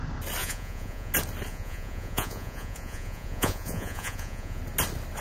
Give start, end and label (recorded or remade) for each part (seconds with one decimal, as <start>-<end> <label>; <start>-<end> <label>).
0.0-0.4 recorded; 0.4-1.1 remade; 1.1-1.5 recorded; 1.5-4.6 remade; 4.6-5.2 recorded